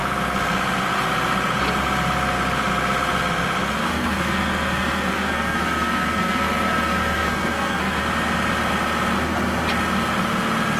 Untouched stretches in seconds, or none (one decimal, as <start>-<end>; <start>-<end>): 0.0-3.9; 8.0-10.8